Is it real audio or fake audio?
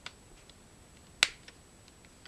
real